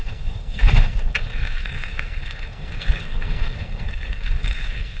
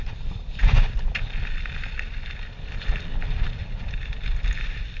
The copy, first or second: first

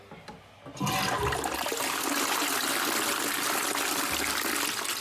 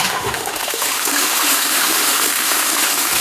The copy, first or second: second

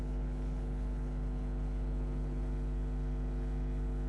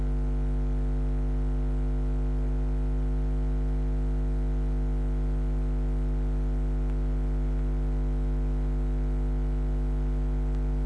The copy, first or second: first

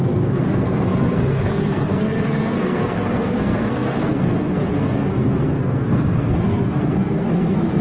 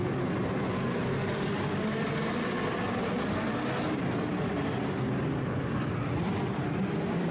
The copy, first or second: first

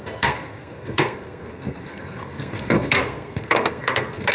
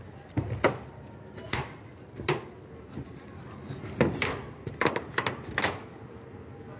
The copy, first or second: first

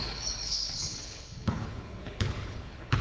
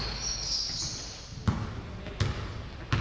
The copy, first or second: first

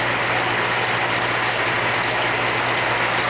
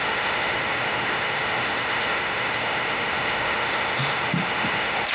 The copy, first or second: second